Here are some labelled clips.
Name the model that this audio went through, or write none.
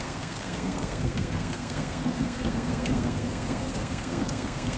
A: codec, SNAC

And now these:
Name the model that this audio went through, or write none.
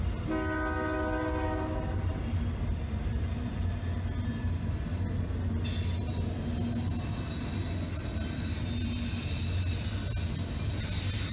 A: none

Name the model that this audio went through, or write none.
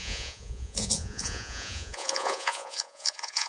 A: vocoder, Vocos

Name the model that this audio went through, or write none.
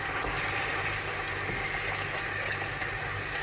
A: none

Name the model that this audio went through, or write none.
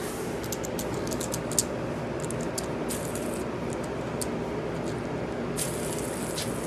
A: none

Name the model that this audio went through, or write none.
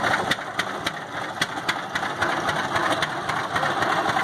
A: none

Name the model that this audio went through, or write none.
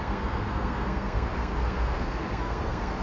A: codec, SNAC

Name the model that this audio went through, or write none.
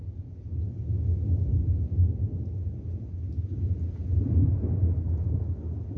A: none